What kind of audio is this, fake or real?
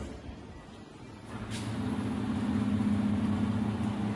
real